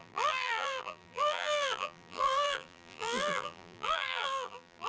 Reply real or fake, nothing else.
fake